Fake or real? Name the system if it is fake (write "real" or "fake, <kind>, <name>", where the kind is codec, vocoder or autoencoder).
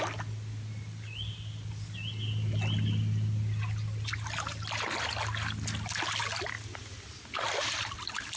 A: real